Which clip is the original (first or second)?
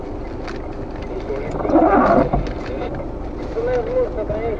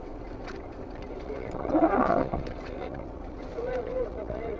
first